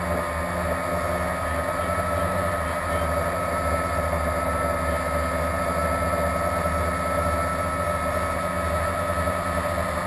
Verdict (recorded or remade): recorded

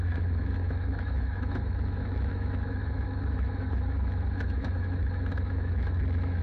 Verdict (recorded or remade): remade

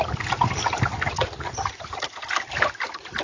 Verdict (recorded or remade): recorded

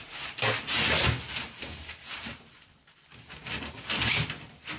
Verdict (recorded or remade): recorded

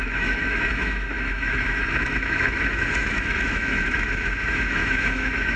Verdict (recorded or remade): remade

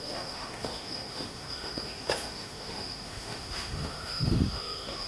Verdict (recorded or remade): remade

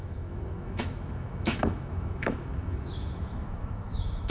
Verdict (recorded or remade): remade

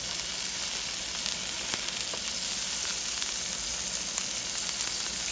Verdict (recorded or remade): recorded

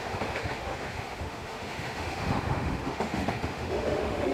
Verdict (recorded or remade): remade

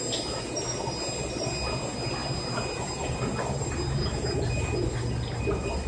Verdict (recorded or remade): recorded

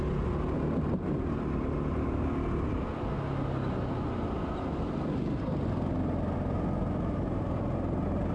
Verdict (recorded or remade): recorded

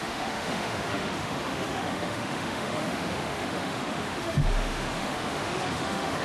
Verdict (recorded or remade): remade